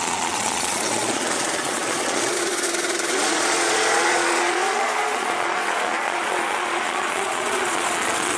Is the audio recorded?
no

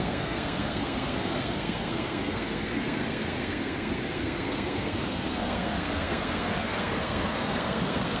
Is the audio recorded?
no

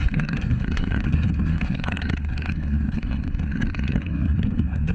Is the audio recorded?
no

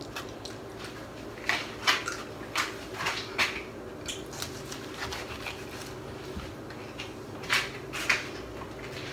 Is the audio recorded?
yes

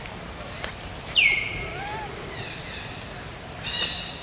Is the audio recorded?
yes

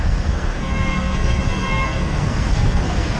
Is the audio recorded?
no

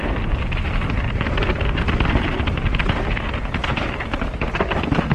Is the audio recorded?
yes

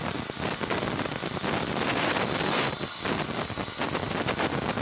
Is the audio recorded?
yes